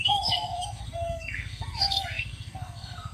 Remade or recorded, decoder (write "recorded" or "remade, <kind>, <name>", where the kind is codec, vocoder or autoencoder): remade, codec, SNAC